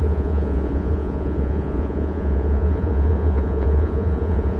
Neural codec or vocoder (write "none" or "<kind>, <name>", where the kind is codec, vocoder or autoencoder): vocoder, Vocos